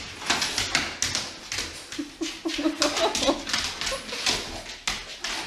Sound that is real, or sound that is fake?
real